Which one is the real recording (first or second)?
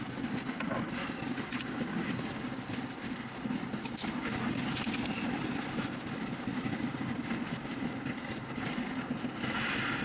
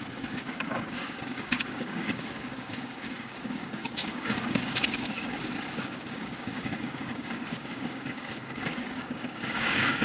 first